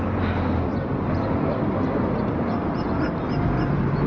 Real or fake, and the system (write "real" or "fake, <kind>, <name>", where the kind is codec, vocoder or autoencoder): real